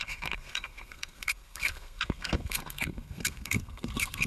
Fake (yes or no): yes